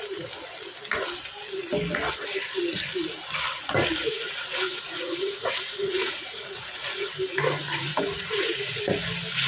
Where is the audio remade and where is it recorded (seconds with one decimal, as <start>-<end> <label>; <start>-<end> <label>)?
0.0-4.0 recorded; 4.0-7.1 remade; 7.1-7.9 recorded; 7.9-8.8 remade; 8.8-9.5 recorded